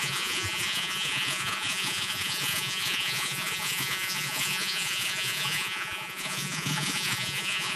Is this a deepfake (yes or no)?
yes